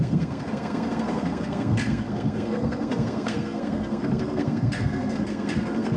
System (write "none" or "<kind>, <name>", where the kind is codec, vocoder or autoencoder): codec, SNAC